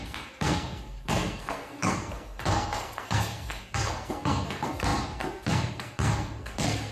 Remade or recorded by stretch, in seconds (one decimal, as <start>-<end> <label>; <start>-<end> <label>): 0.0-6.9 remade